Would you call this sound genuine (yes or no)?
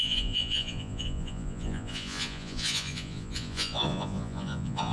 no